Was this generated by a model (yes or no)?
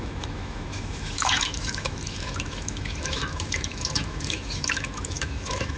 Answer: yes